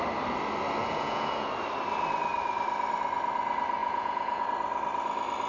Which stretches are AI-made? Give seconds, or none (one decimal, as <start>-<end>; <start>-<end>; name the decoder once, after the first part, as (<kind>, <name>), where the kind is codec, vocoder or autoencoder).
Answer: 0.8-1.5 (vocoder, Vocos); 3.8-4.4